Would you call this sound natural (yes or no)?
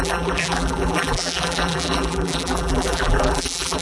no